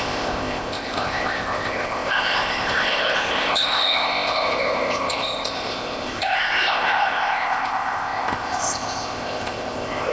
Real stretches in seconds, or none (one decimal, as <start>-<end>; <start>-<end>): none